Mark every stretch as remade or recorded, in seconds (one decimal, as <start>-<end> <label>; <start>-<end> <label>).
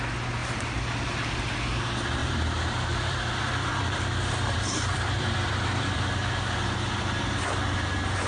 0.0-2.2 recorded; 2.2-6.0 remade; 6.0-8.3 recorded